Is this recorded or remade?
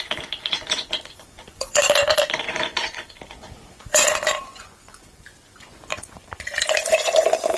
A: remade